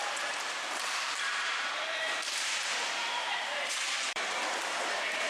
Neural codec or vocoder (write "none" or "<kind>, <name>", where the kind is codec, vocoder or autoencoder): vocoder, BigVGAN v2